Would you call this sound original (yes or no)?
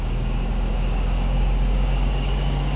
no